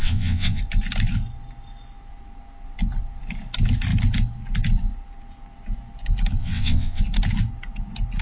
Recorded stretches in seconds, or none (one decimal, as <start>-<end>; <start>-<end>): 0.6-6.4; 7.0-8.2